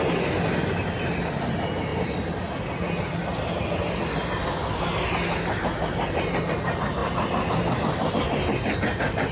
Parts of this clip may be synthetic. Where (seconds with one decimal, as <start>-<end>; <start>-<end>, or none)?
none